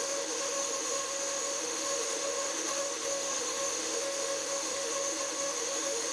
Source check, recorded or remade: remade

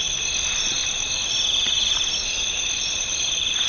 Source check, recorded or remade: recorded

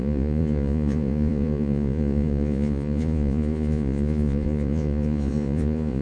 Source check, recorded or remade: remade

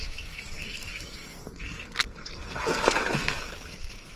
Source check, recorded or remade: remade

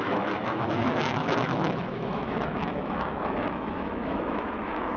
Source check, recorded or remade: remade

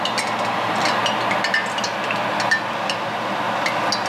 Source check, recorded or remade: recorded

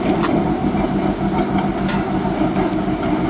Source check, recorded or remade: recorded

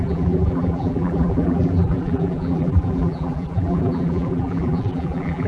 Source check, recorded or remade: remade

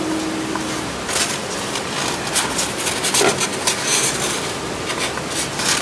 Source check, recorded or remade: recorded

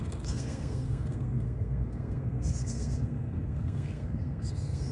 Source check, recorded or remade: remade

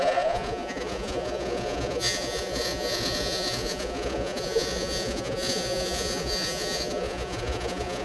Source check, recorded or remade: remade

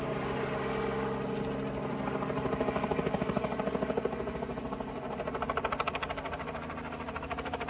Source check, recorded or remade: recorded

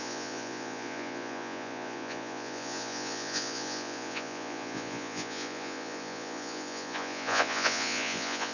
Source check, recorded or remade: remade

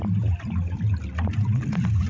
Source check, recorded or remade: recorded